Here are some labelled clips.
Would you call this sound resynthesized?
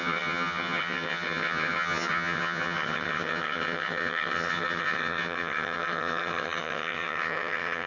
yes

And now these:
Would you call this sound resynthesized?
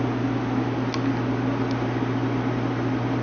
no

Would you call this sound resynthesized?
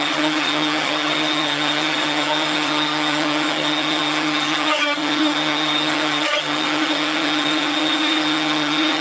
yes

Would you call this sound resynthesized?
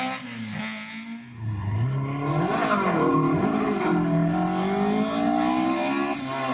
no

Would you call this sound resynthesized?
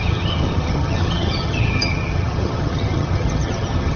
yes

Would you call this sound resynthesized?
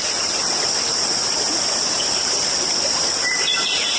no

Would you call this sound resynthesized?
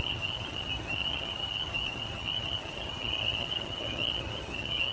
yes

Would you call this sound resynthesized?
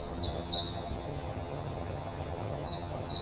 yes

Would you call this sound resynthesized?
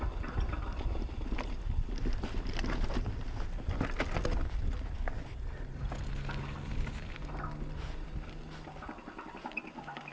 no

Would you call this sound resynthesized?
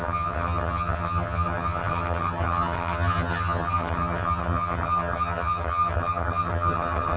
yes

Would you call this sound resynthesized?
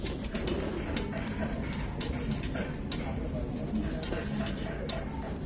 no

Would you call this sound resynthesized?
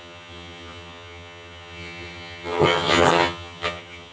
yes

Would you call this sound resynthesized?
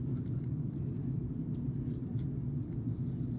no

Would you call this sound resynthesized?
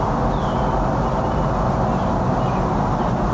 no